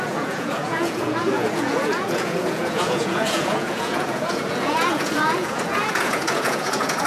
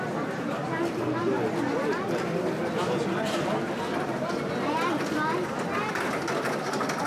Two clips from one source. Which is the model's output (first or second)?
first